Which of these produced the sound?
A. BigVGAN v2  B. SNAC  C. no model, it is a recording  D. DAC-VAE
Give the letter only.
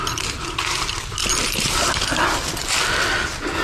C